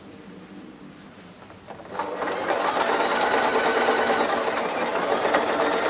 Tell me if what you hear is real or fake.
real